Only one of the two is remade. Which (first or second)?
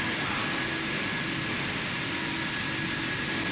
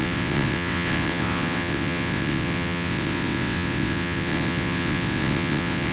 second